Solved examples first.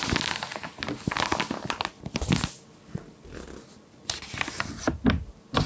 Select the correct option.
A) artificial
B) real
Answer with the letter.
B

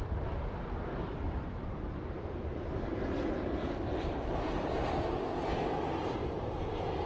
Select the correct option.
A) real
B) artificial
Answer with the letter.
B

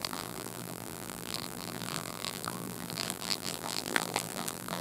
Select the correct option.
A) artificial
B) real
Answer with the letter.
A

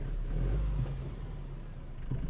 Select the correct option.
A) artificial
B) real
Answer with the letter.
B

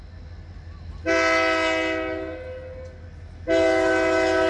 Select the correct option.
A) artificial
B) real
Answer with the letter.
B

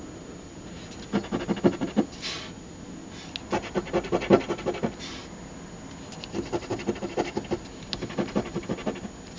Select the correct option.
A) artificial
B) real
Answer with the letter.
B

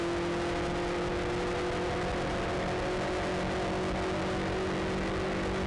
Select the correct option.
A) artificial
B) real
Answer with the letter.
B